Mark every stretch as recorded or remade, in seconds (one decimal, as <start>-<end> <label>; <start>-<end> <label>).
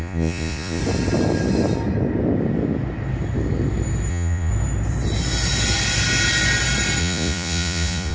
0.0-0.8 remade; 0.8-4.1 recorded; 4.1-4.5 remade; 4.5-7.0 recorded; 7.0-8.1 remade